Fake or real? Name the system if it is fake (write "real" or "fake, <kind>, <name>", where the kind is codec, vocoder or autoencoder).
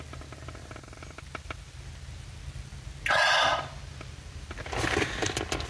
real